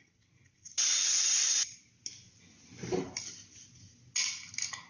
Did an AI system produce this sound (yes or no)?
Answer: no